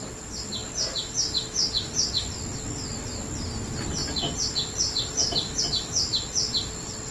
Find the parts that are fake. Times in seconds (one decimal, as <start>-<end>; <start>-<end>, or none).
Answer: none